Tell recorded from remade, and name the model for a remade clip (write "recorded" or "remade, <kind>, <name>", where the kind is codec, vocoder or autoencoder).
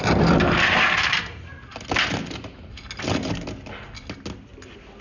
recorded